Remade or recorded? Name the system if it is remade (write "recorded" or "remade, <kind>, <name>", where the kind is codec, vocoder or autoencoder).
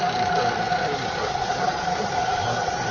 recorded